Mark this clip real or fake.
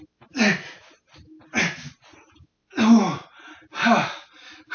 real